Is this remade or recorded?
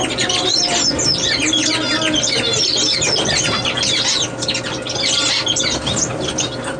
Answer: recorded